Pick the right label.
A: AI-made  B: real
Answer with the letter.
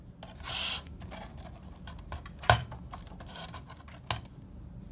B